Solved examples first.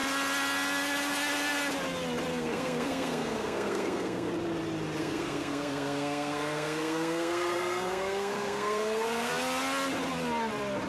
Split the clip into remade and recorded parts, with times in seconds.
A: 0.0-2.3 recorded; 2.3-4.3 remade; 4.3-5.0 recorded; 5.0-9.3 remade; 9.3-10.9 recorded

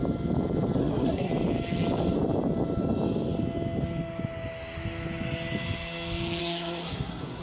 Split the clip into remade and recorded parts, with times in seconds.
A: 0.0-0.8 recorded; 0.8-1.3 remade; 1.3-6.4 recorded; 6.4-7.4 remade

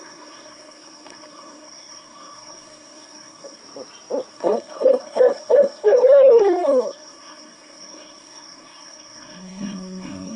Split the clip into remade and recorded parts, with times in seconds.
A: 0.0-3.6 remade; 3.6-4.3 recorded; 4.3-10.4 remade

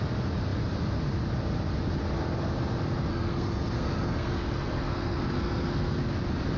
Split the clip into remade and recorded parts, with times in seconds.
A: 0.0-3.1 recorded; 3.1-6.1 remade; 6.1-6.6 recorded

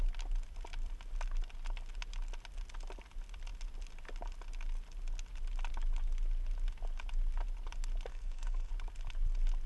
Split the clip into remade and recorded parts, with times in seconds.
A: 0.0-8.1 recorded; 8.1-8.7 remade; 8.7-9.7 recorded

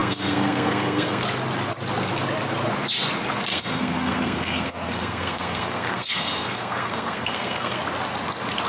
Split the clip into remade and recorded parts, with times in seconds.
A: 0.0-1.2 remade; 1.2-3.5 recorded; 3.5-7.8 remade; 7.8-8.7 recorded

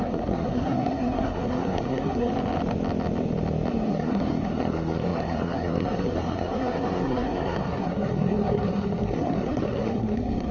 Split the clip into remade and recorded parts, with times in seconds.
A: 0.0-2.3 remade; 2.3-3.7 recorded; 3.7-10.5 remade

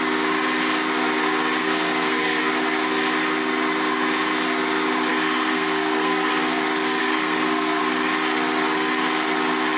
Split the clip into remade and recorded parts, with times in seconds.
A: 0.0-1.6 recorded; 1.6-2.4 remade; 2.4-5.1 recorded; 5.1-6.3 remade; 6.3-7.0 recorded; 7.0-7.8 remade; 7.8-9.8 recorded